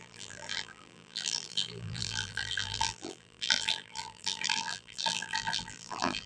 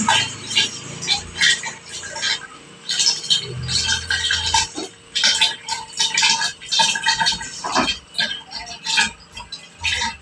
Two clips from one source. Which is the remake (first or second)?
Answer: first